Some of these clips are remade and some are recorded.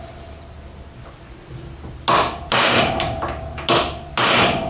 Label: recorded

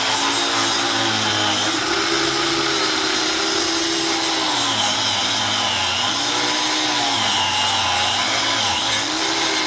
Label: recorded